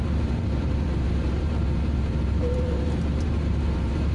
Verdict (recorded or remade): remade